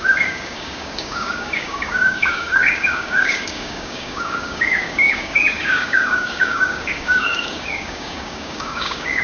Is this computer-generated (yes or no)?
yes